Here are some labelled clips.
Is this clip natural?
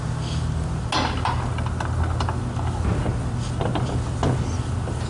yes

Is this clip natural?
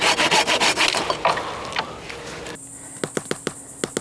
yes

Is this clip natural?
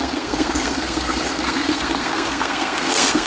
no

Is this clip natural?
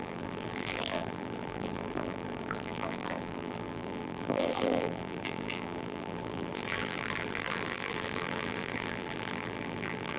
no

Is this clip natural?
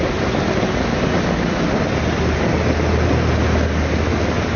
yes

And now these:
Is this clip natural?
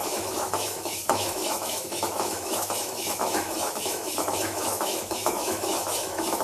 no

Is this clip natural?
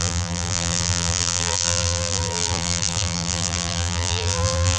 no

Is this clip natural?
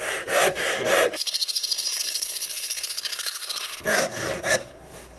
no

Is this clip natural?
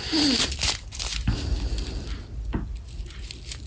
yes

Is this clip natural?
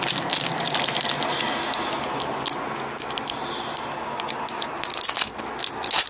yes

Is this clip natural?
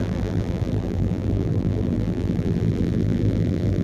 no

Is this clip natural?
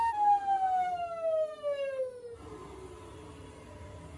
yes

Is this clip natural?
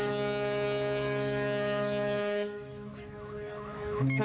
no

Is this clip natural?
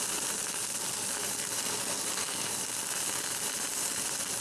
yes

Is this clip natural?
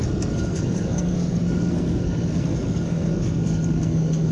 no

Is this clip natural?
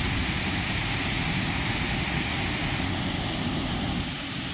yes